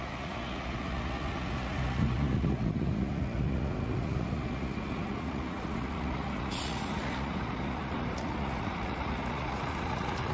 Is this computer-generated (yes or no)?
yes